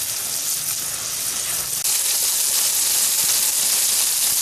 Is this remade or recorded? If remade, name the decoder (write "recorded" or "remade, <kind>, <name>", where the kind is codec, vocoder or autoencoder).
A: recorded